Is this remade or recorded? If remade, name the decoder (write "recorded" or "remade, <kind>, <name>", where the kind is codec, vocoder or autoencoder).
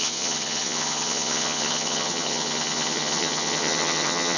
remade, vocoder, HiFi-GAN